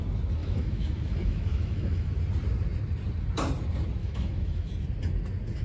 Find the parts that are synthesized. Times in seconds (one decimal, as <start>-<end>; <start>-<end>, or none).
0.4-2.1; 4.0-4.7